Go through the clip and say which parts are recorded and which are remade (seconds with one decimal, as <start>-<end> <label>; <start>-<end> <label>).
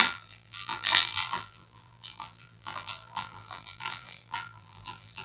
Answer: 0.0-5.2 remade